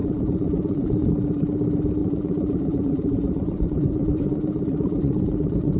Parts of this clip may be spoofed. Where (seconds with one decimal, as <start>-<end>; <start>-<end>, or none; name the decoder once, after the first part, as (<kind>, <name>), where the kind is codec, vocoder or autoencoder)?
0.0-1.1 (vocoder, Vocos); 2.0-5.8